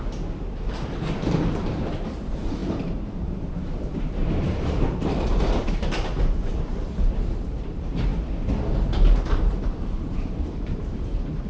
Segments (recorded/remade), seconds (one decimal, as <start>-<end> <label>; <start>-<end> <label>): 0.0-8.1 remade; 8.1-9.3 recorded; 9.3-11.5 remade